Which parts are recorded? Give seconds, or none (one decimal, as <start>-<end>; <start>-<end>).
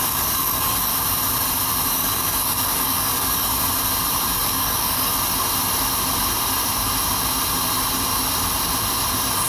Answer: 0.9-1.9; 3.5-4.4; 5.1-9.5